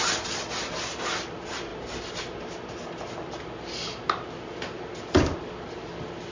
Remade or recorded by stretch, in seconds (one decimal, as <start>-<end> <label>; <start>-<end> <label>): 0.0-6.3 recorded